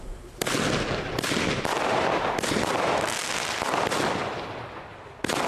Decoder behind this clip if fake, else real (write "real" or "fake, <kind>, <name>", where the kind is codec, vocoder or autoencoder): real